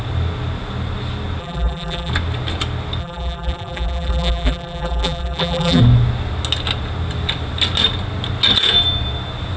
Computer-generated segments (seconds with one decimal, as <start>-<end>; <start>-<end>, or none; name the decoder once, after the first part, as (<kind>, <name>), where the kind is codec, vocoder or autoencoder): 1.4-2.1 (vocoder, BigVGAN v2); 3.0-5.8